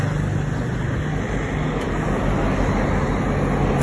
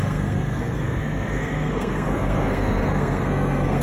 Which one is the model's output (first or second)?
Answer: second